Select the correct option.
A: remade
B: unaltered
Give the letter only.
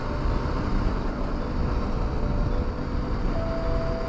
B